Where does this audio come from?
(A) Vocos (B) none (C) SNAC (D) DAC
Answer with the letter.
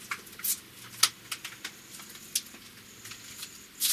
B